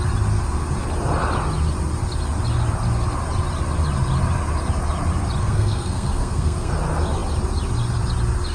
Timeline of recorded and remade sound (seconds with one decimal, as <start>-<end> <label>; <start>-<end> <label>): 0.0-5.4 recorded; 5.4-6.7 remade; 6.7-8.5 recorded